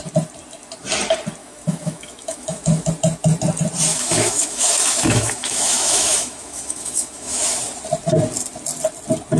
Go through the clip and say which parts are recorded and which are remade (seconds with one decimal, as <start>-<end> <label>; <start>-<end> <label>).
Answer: 0.0-1.4 recorded; 1.4-2.9 remade; 2.9-3.9 recorded; 3.9-7.6 remade; 7.6-9.4 recorded